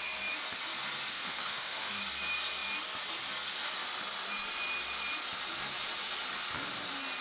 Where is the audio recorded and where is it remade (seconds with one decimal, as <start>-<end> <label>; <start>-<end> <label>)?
0.0-1.1 recorded; 1.1-2.0 remade; 2.0-7.2 recorded